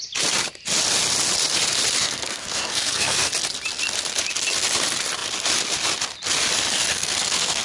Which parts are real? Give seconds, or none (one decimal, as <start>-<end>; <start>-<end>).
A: 0.0-2.0; 3.3-6.9